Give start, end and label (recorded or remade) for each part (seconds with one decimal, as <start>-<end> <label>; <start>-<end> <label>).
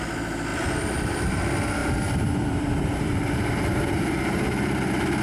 0.0-1.8 recorded; 1.8-5.2 remade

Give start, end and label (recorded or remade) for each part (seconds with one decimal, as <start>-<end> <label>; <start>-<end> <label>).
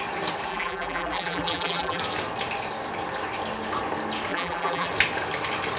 0.0-0.5 recorded; 0.5-2.0 remade; 2.0-4.3 recorded; 4.3-4.9 remade; 4.9-5.8 recorded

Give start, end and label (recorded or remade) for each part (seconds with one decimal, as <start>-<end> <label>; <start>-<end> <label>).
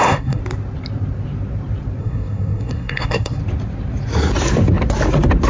0.0-0.4 remade; 0.4-2.0 recorded; 2.0-3.4 remade; 3.4-5.5 recorded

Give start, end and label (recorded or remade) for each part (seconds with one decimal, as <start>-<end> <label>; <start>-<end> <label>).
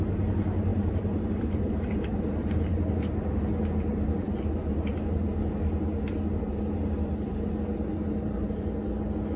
0.0-0.7 recorded; 0.7-2.9 remade; 2.9-9.4 recorded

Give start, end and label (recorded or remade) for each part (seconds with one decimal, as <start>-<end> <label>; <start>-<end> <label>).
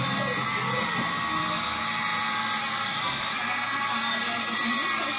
0.0-5.2 recorded